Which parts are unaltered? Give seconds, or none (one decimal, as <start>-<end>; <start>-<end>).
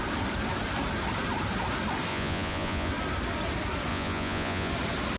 0.0-2.1; 2.9-3.9; 4.7-5.2